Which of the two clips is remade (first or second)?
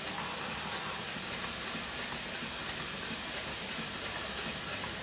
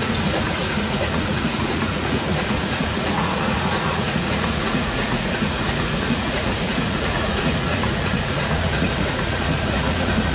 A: second